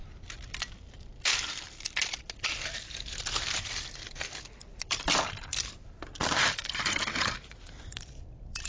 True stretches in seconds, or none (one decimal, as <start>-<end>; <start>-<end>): 0.0-0.7; 1.1-4.7